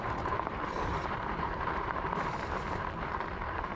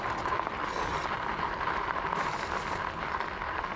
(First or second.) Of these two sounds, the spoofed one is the first